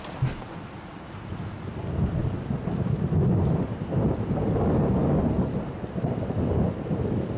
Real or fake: real